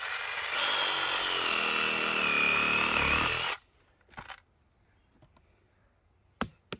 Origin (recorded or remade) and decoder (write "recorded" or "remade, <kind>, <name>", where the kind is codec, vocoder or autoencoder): recorded